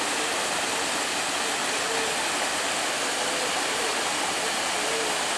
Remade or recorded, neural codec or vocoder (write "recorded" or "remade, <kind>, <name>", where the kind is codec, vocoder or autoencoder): recorded